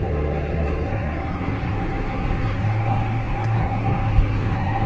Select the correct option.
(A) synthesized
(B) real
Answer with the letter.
A